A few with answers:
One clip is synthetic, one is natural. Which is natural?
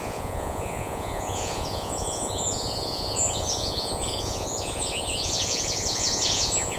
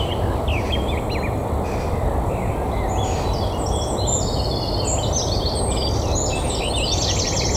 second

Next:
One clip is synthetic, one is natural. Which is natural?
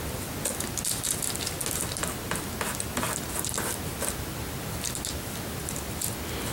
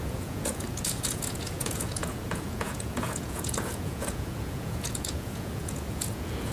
first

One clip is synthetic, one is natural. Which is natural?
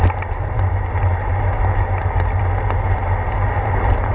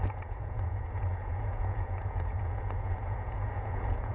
first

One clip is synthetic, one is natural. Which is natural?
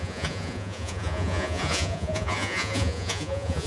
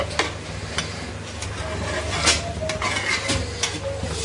second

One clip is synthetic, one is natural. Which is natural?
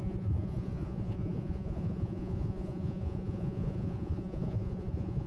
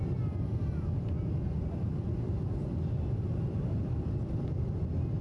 second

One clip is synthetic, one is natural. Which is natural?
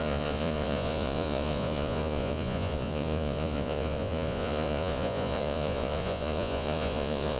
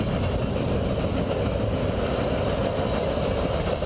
second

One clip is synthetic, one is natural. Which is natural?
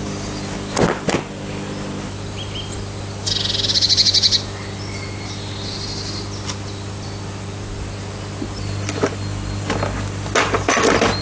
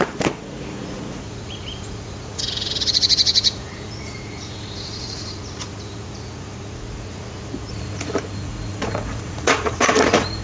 first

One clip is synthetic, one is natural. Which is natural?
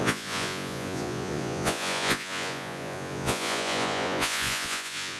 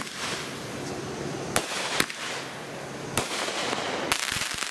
second